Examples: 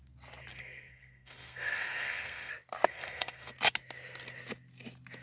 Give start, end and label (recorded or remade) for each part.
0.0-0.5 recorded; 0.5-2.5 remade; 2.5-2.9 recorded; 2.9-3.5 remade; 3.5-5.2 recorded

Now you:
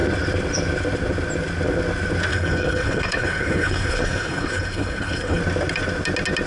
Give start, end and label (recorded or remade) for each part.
0.0-2.3 recorded; 2.3-5.4 remade; 5.4-6.5 recorded